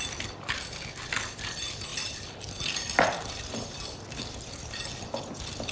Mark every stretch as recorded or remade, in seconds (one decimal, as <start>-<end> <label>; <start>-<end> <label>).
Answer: 0.0-5.7 recorded